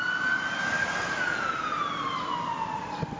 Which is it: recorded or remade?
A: recorded